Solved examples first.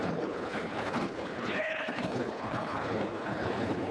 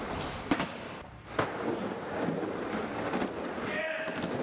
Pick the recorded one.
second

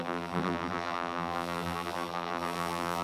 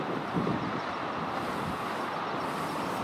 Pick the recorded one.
second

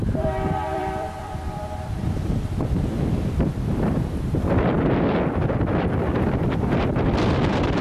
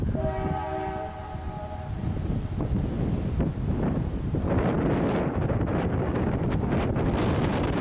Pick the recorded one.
second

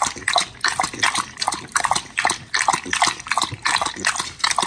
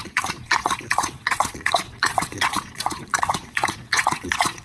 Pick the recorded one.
first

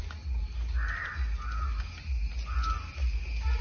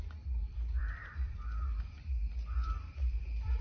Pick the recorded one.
first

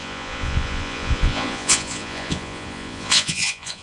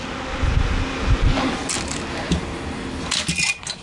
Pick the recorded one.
second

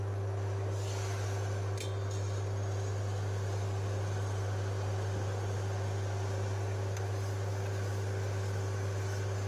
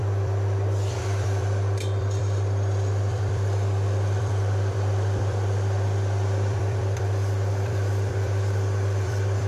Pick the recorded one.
first